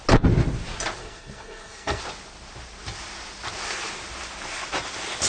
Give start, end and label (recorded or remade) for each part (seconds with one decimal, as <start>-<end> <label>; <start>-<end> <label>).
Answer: 0.0-1.0 recorded; 1.0-2.0 remade; 2.0-5.3 recorded